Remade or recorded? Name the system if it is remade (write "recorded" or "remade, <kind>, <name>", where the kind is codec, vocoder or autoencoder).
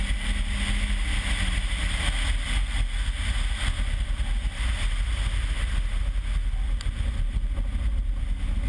recorded